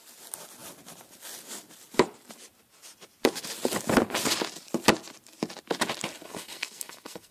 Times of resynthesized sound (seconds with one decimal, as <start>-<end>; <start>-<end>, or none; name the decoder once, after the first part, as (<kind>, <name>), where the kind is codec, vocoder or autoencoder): 6.2-7.3 (codec, SNAC)